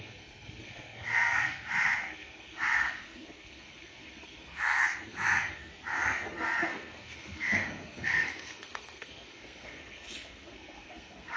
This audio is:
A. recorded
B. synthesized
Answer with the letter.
B